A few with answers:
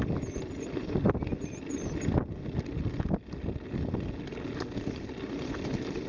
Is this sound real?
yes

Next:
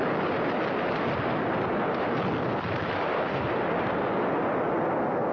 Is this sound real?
yes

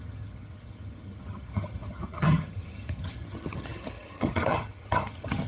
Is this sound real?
no